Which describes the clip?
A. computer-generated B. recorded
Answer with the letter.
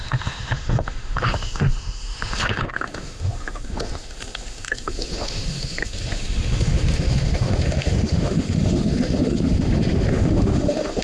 A